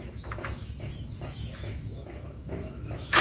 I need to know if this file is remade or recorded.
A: remade